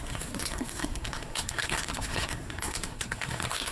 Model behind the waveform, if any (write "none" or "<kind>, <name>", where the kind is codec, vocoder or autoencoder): codec, SNAC